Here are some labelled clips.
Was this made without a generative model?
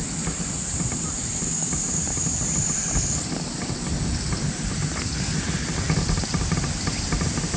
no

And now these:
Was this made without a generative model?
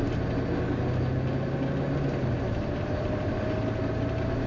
yes